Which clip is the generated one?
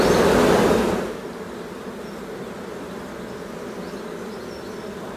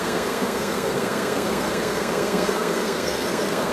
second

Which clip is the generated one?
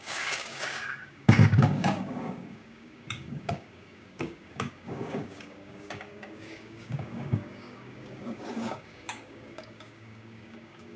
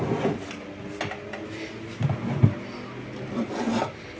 first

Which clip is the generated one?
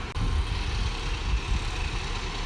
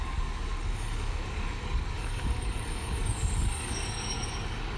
second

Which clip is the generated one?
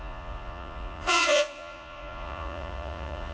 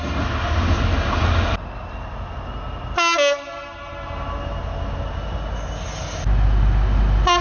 first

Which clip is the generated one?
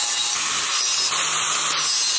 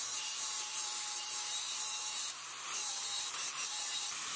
second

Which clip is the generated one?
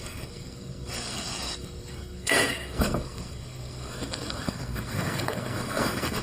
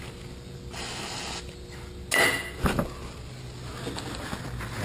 first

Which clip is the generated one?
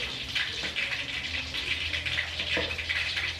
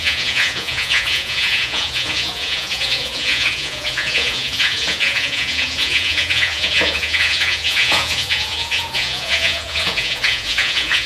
second